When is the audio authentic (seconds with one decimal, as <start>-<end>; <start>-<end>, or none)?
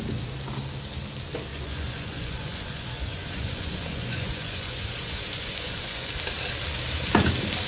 0.0-1.5; 6.1-7.7